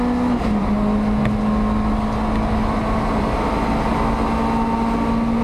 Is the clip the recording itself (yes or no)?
yes